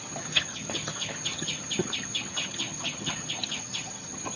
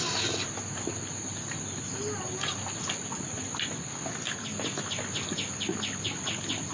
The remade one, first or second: first